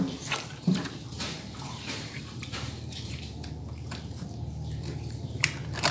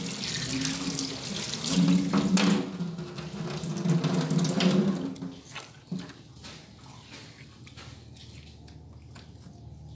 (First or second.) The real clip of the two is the second